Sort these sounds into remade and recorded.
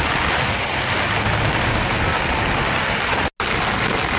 recorded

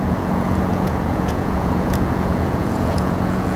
remade